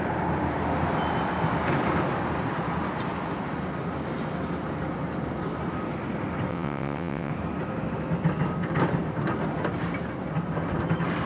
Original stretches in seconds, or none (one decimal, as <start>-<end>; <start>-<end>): 0.0-6.5; 7.3-11.3